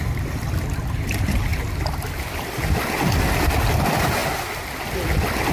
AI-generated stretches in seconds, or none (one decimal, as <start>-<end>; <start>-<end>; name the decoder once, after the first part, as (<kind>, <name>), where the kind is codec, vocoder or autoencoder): none